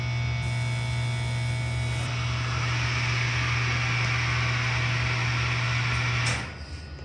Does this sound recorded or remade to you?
recorded